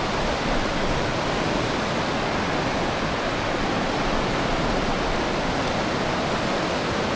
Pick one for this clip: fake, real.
real